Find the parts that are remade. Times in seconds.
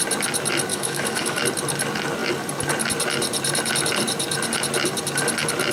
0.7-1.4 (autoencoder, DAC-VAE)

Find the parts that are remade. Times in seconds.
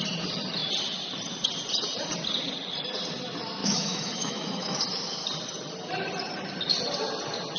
3.6-4.8 (autoencoder, DAC-VAE)